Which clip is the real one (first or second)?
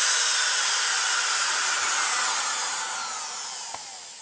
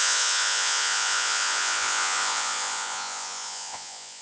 first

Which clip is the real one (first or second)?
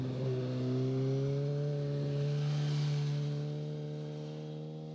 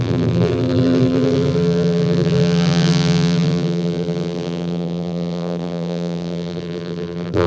first